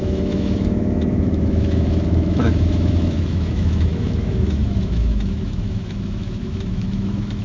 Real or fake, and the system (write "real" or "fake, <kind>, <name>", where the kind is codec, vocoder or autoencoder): fake, autoencoder, DAC-VAE